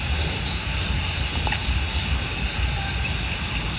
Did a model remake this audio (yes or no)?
no